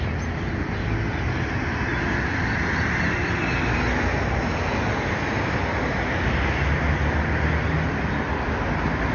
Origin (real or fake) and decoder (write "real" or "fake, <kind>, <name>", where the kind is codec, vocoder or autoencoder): real